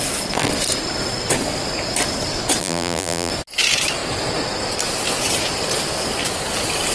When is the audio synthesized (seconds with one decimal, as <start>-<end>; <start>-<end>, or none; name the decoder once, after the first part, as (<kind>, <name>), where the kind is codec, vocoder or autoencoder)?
2.6-3.3 (vocoder, BigVGAN v2)